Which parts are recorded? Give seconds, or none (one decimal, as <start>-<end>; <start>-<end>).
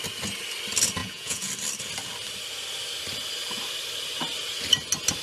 0.0-1.0; 1.5-5.2